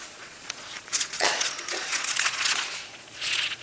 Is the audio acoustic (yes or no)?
no